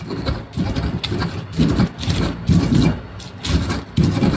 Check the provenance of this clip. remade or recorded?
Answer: recorded